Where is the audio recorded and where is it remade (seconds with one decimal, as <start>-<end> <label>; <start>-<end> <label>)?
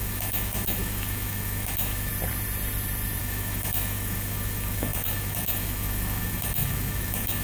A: 0.0-2.1 remade; 2.1-3.2 recorded; 3.2-7.4 remade